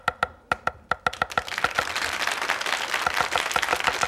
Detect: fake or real real